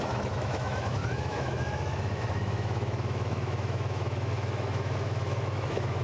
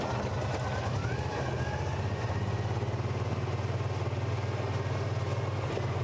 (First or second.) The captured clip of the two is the second